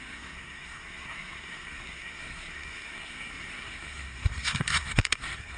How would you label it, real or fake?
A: fake